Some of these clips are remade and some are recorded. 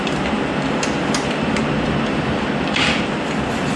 recorded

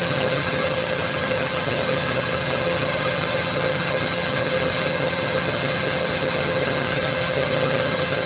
remade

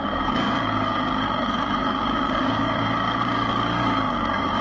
remade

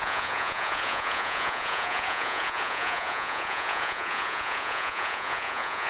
remade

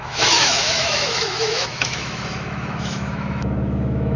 remade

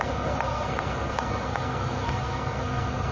remade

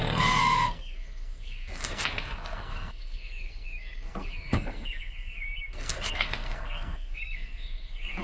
remade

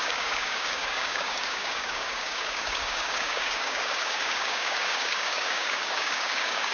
remade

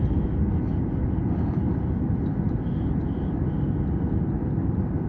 recorded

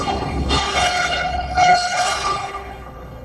remade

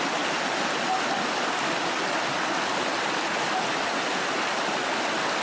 recorded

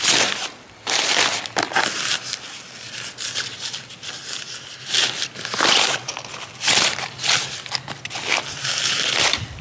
recorded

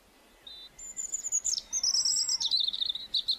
recorded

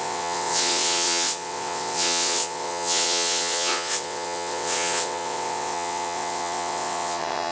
remade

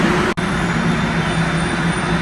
recorded